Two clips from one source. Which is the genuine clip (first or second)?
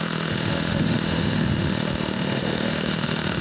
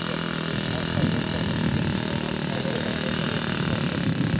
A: second